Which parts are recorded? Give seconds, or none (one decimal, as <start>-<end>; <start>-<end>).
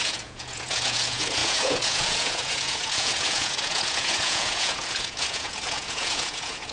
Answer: none